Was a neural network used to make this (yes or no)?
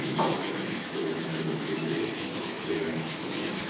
yes